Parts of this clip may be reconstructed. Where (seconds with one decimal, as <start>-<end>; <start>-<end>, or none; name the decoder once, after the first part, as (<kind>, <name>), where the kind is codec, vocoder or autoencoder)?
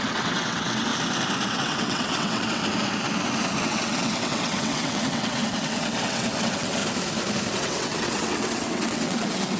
0.0-0.9 (vocoder, WaveNeXt); 1.5-2.6; 3.6-6.8; 7.5-9.6